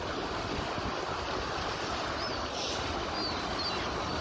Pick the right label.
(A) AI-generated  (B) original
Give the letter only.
B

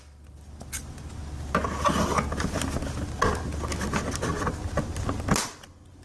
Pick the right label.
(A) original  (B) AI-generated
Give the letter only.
A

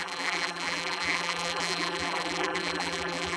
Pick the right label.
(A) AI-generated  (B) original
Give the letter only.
A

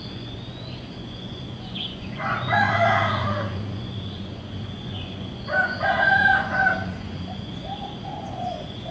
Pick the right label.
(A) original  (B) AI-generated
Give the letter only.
B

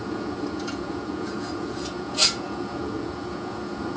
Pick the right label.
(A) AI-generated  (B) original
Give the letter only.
A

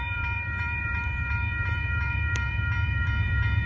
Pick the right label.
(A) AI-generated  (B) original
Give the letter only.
A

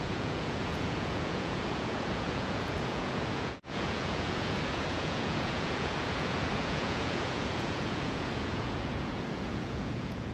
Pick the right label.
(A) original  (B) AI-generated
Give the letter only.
B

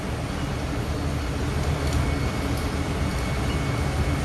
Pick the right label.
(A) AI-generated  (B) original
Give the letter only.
B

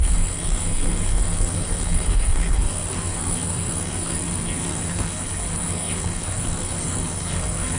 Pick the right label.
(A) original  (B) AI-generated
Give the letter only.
B